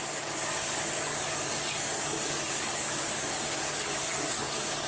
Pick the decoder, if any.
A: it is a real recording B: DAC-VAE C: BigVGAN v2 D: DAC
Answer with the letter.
D